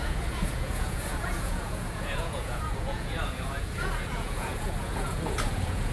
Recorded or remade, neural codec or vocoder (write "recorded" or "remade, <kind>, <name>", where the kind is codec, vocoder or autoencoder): remade, vocoder, Vocos